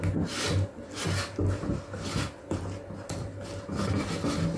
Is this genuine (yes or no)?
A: yes